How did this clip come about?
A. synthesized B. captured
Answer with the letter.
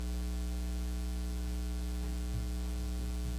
B